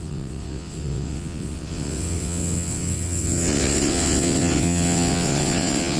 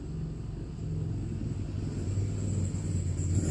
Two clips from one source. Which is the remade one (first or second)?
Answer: first